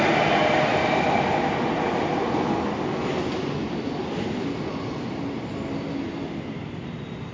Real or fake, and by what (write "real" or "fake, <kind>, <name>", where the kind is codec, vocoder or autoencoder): real